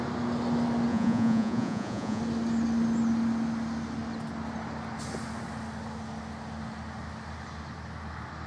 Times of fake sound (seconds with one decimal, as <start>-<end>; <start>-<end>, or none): 0.9-2.2